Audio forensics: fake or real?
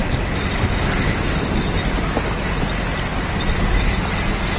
real